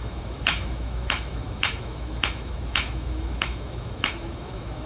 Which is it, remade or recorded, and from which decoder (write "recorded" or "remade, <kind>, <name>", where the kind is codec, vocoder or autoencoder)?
remade, autoencoder, DAC-VAE